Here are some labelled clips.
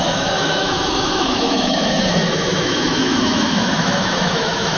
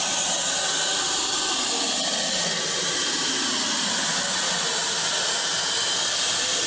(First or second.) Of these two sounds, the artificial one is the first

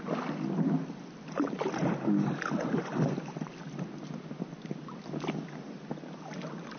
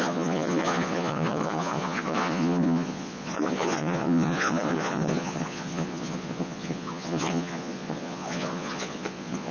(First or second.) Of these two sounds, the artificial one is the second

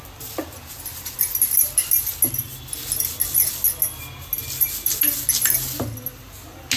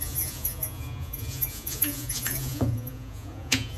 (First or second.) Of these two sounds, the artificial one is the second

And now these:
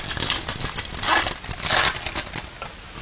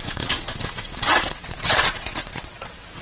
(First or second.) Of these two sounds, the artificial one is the second